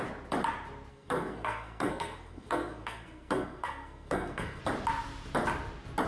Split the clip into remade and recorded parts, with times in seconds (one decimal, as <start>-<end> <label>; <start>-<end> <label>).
0.0-0.9 recorded; 0.9-4.6 remade; 4.6-6.1 recorded